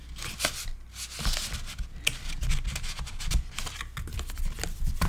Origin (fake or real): real